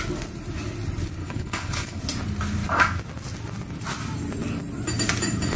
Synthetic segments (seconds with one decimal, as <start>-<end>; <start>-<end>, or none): 1.2-2.0